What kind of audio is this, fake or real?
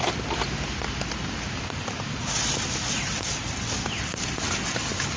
real